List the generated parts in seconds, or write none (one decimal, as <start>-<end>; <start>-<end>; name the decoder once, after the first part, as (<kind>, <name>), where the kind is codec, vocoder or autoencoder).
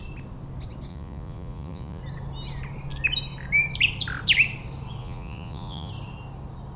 0.9-2.0 (vocoder, Vocos); 5.0-5.9